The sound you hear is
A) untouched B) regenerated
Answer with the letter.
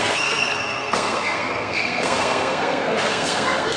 B